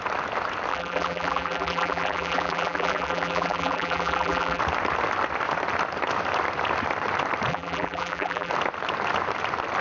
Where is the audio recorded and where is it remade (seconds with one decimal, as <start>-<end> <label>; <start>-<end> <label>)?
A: 0.0-0.7 recorded; 0.7-4.6 remade; 4.6-7.5 recorded; 7.5-8.5 remade; 8.5-9.8 recorded